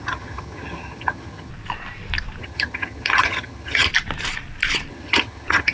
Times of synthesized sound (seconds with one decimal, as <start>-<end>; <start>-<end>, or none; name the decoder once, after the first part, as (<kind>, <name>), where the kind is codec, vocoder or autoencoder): 0.0-1.5 (vocoder, HiFi-GAN); 2.4-3.9; 4.9-5.7